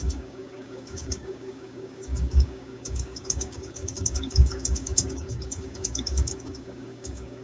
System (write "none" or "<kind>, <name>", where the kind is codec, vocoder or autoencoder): codec, DAC